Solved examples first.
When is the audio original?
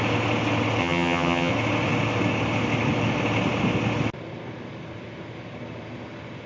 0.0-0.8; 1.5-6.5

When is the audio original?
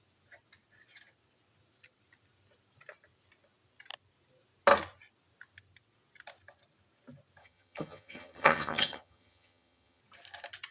0.0-7.4; 10.0-10.7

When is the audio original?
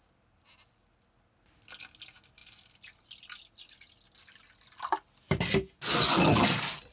0.0-6.9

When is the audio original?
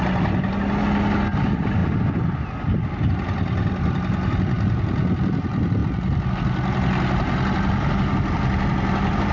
0.0-9.3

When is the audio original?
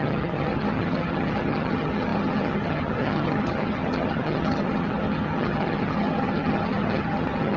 none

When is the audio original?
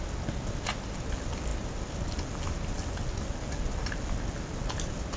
0.0-5.2